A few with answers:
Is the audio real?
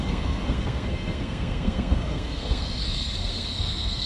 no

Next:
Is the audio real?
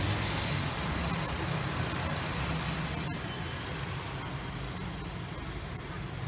yes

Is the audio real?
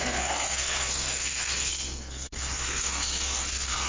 no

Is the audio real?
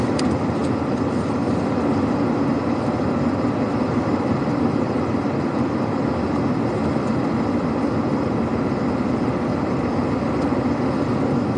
yes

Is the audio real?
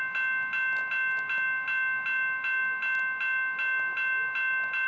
yes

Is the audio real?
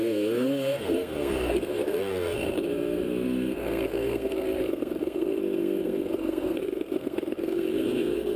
no